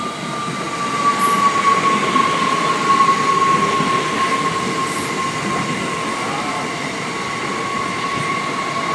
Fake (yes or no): no